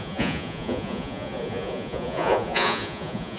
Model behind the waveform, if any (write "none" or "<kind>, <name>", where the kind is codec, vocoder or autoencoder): vocoder, Vocos